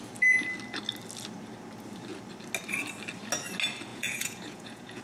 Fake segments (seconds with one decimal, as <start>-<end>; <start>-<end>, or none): 3.9-5.0